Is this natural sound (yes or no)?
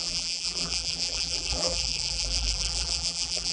no